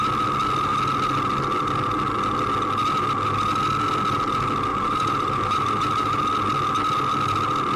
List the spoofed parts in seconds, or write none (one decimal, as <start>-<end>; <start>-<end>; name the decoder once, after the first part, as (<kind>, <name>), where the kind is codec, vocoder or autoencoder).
4.7-6.2 (vocoder, BigVGAN v2)